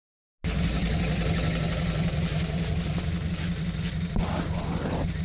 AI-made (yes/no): no